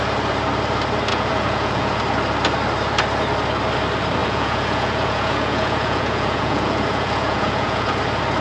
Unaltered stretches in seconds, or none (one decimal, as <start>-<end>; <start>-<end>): 0.0-1.1; 2.0-4.2; 8.0-8.4